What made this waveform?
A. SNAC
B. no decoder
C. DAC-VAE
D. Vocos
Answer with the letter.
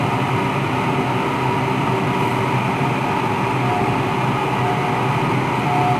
B